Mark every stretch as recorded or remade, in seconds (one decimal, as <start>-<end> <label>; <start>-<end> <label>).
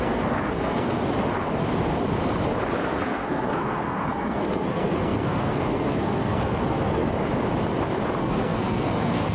0.0-1.0 remade; 1.0-2.8 recorded; 2.8-7.0 remade; 7.0-8.2 recorded; 8.2-9.3 remade